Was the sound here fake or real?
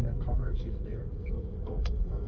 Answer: fake